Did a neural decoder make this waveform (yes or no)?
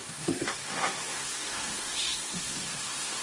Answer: yes